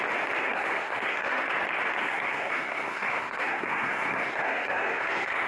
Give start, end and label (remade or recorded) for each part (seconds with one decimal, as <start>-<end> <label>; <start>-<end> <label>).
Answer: 0.0-0.4 recorded; 0.4-1.5 remade; 1.5-2.0 recorded; 2.0-5.5 remade